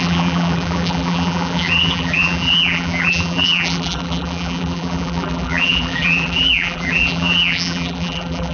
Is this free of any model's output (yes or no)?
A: no